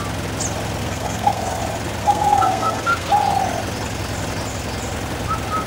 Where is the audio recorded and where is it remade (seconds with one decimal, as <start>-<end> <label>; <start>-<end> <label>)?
0.0-0.8 recorded; 0.8-1.6 remade; 1.6-2.0 recorded; 2.0-3.1 remade; 3.1-5.7 recorded